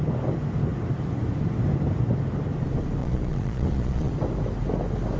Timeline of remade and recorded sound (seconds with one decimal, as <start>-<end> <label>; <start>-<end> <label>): 0.0-3.0 recorded; 3.0-4.1 remade; 4.1-5.2 recorded